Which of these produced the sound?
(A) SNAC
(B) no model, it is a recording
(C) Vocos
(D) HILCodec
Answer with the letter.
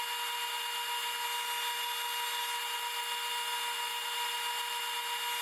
B